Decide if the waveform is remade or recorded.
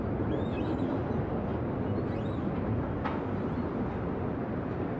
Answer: recorded